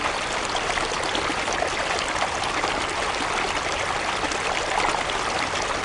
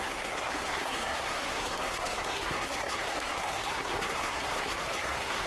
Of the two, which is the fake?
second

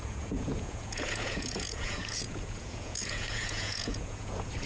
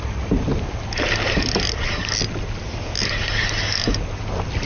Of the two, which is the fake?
first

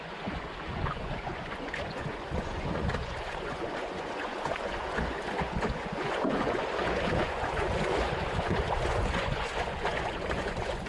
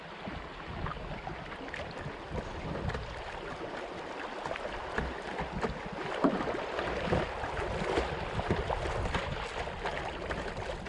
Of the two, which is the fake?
first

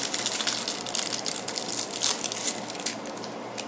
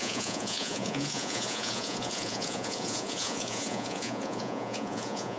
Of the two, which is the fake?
second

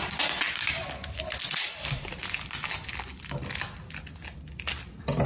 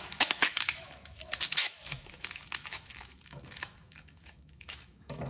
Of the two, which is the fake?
second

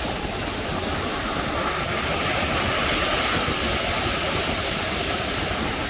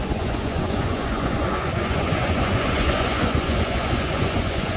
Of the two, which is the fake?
second